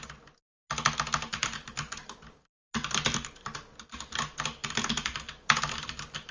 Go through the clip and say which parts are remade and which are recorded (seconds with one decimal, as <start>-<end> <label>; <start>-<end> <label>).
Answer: 0.0-6.3 recorded

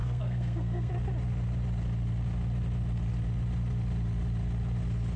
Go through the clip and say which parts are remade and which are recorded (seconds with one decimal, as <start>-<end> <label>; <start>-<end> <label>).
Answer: 0.0-0.9 remade; 0.9-5.2 recorded

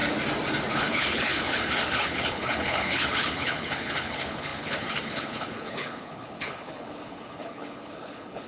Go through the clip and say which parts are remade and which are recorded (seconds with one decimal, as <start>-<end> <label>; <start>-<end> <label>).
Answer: 0.0-0.7 recorded; 0.7-8.5 remade

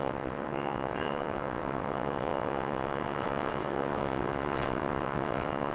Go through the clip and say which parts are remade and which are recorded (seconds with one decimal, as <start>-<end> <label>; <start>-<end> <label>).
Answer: 0.0-5.7 remade

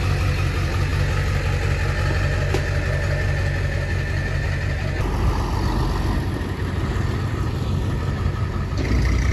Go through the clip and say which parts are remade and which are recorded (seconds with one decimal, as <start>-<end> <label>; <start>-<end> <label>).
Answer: 0.0-9.3 recorded

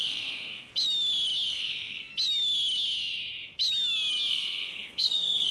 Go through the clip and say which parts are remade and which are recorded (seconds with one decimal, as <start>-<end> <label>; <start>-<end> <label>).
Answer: 0.0-0.7 remade; 0.7-1.5 recorded; 1.5-2.1 remade; 2.1-4.3 recorded; 4.3-5.5 remade

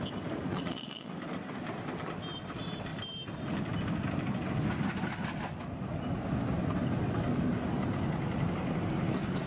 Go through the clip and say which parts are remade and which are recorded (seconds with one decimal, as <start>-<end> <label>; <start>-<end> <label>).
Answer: 0.0-0.5 recorded; 0.5-1.1 remade; 1.1-9.5 recorded